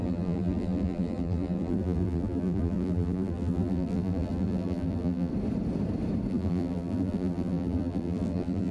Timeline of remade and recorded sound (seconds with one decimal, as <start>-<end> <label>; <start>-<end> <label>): 0.0-5.3 remade; 5.3-6.3 recorded; 6.3-8.7 remade

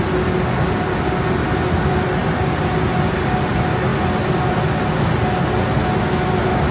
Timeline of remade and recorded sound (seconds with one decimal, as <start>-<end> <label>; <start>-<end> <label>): 0.0-6.7 recorded